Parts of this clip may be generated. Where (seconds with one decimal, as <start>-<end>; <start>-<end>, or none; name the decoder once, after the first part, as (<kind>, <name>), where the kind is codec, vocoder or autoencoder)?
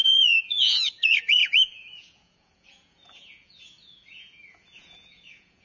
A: 0.0-5.6 (vocoder, Vocos)